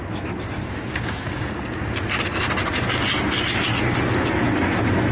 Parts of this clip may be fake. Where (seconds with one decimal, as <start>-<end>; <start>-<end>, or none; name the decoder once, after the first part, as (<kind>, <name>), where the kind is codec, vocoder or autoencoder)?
0.9-1.8 (codec, DAC)